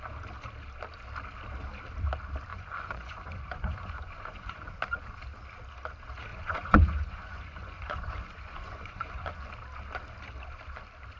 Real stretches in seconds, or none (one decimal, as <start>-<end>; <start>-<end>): 0.0-2.5; 4.8-6.3; 9.5-11.2